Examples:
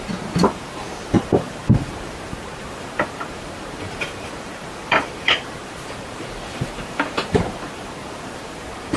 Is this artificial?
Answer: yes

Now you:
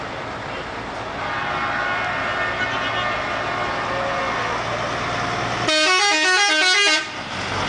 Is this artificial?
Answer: no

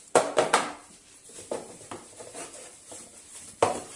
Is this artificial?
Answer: yes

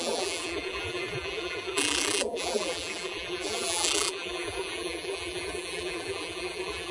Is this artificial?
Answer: yes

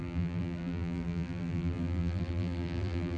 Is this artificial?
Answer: yes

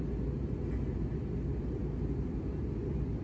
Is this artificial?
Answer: no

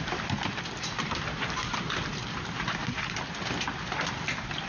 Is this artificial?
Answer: no